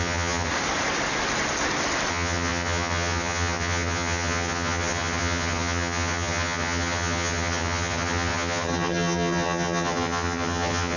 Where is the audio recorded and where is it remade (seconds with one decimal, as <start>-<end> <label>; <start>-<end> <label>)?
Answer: 0.0-0.5 remade; 0.5-2.1 recorded; 2.1-11.0 remade